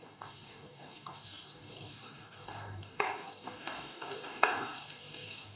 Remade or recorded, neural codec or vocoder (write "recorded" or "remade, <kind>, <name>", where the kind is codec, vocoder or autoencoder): remade, codec, DAC